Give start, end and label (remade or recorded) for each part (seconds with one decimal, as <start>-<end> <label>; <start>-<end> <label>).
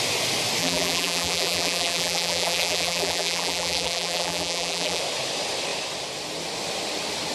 0.0-0.6 recorded; 0.6-5.0 remade; 5.0-7.3 recorded